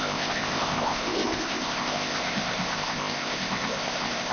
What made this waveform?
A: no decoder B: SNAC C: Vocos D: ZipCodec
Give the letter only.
D